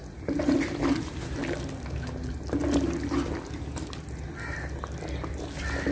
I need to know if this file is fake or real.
real